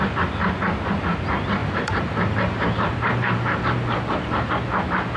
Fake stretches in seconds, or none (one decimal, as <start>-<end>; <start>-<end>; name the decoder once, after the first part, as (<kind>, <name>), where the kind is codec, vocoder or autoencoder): 1.6-4.5 (vocoder, BigVGAN v2)